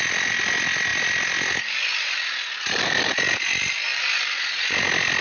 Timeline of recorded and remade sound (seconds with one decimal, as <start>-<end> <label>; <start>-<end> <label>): 0.0-0.9 recorded; 0.9-2.4 remade; 2.4-3.9 recorded; 3.9-5.2 remade